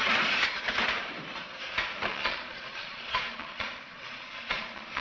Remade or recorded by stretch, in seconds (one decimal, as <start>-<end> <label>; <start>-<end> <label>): 0.0-2.1 recorded; 2.1-5.0 remade